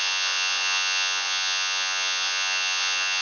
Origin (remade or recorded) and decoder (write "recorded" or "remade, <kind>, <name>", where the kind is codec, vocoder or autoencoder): remade, vocoder, Vocos